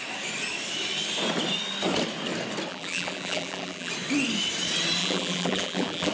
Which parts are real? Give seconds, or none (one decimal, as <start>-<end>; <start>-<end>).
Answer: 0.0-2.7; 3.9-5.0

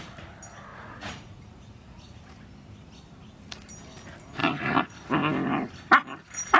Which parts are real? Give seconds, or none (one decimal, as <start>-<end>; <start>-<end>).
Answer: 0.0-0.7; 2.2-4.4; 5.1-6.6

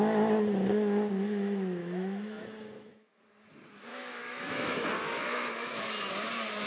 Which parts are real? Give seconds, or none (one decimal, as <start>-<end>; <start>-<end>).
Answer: 0.0-1.8; 3.2-3.9; 5.8-6.7

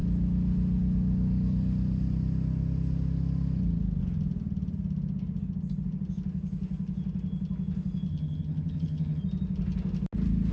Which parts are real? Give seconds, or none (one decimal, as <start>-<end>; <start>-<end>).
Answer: 0.0-8.1; 9.2-10.5